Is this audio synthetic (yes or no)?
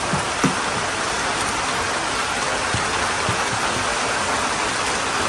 no